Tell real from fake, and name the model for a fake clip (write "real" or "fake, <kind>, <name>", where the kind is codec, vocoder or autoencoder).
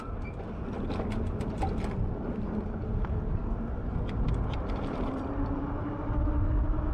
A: real